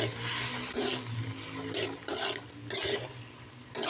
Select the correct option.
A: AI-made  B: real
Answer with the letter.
B